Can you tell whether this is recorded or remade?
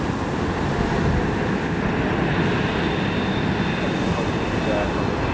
recorded